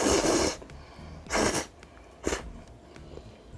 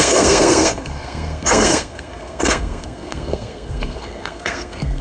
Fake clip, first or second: second